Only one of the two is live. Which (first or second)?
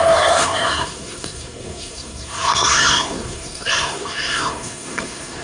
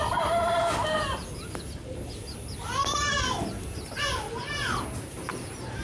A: second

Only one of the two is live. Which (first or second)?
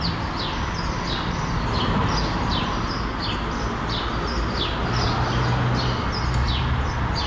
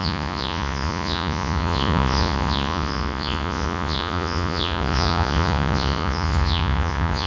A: first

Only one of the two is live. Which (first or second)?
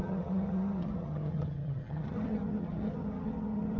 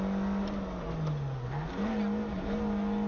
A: second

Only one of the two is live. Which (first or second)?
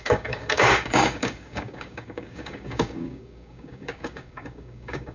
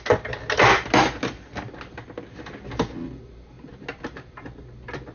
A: second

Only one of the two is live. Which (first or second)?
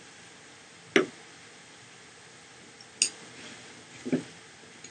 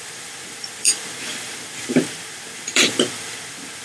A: first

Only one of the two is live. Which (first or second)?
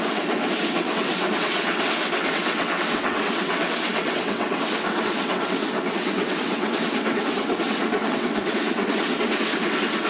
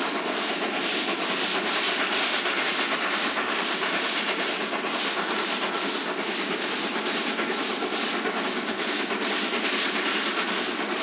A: second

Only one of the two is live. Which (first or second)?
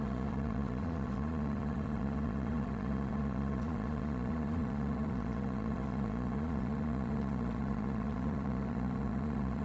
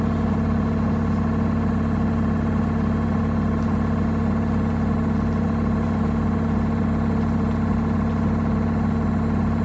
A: second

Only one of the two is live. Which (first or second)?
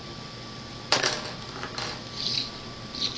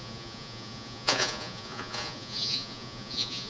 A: first